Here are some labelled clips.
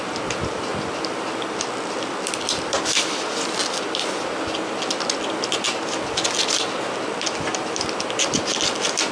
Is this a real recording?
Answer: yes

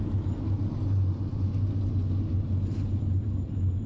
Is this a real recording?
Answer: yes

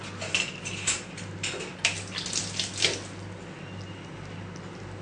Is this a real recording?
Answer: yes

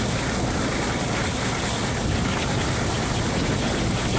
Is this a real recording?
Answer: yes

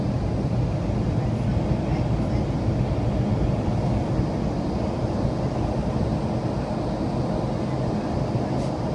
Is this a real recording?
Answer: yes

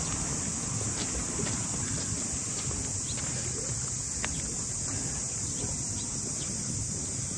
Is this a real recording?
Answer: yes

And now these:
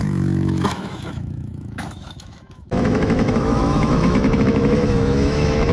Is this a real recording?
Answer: no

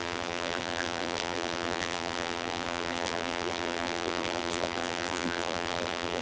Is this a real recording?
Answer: no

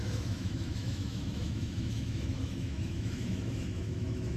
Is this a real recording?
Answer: no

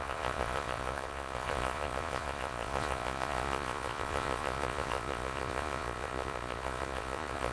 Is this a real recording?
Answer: no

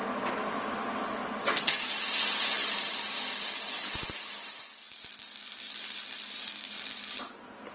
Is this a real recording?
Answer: yes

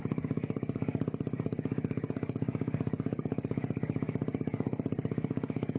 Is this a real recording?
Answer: no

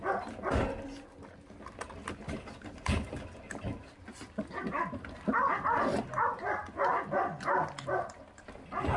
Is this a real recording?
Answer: yes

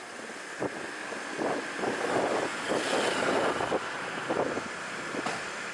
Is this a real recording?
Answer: yes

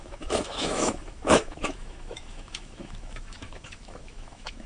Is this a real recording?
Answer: no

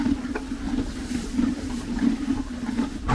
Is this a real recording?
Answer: yes